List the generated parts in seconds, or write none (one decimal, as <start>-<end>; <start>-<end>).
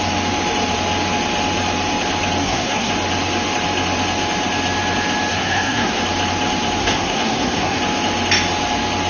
2.4-2.9; 5.3-6.0; 6.8-7.8